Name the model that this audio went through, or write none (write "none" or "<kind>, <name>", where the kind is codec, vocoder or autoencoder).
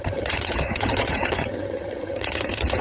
vocoder, HiFi-GAN